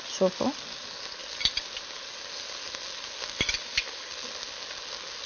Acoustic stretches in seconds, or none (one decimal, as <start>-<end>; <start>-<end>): 0.0-5.3